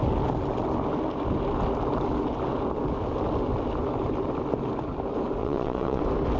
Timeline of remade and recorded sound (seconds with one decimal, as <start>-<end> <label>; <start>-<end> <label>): 0.0-5.4 recorded; 5.4-6.0 remade; 6.0-6.4 recorded